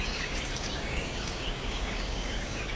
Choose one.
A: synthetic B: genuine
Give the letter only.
A